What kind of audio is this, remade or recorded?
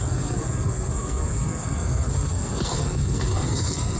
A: remade